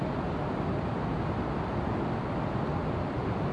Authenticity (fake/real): real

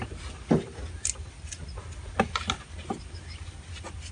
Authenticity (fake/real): real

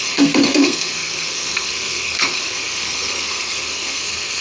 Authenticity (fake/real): fake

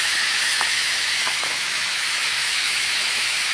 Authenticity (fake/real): fake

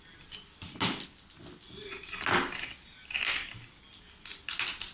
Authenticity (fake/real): real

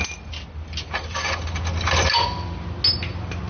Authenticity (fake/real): real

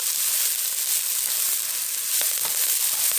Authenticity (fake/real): real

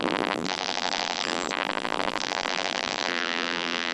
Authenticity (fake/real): fake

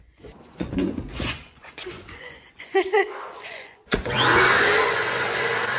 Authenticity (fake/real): fake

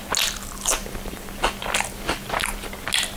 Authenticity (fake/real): real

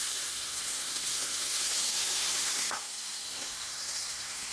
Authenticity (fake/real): fake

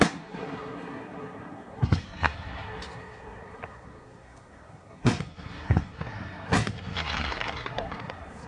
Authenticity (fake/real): fake